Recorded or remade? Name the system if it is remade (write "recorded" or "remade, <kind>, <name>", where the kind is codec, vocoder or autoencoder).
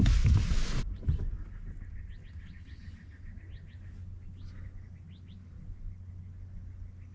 recorded